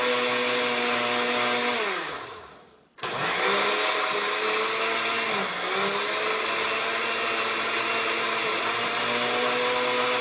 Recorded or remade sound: recorded